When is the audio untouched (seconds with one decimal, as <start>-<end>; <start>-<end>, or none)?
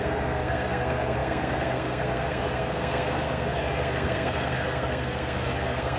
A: none